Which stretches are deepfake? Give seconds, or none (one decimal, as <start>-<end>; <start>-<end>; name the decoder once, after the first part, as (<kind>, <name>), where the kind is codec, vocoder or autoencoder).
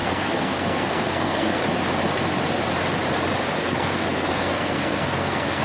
0.0-1.6 (codec, SNAC); 3.6-5.6